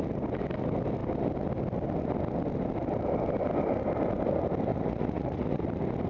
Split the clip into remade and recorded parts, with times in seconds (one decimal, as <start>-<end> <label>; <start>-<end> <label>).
0.0-4.7 recorded; 4.7-5.6 remade; 5.6-6.1 recorded